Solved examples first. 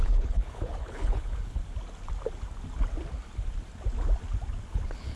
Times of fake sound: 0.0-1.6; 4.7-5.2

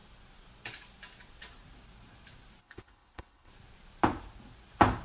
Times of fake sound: 2.6-3.5

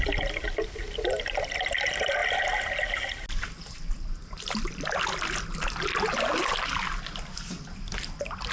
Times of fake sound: none

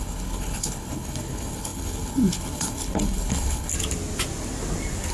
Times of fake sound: 0.0-3.7

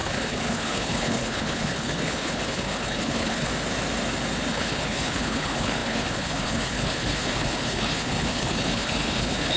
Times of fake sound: 0.0-3.5; 4.5-9.6

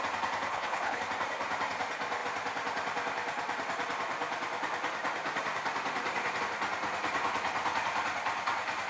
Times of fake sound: 0.5-1.0

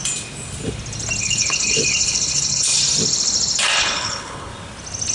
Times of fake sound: 1.2-2.8; 3.8-4.5